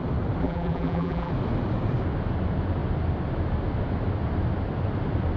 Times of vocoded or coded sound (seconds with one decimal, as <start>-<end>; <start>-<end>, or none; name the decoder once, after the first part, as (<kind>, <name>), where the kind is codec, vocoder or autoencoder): 0.4-1.3 (vocoder, BigVGAN v2)